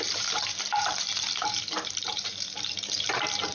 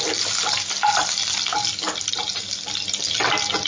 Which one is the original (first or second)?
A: second